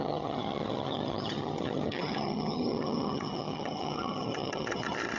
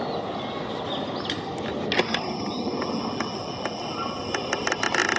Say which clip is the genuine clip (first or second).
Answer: second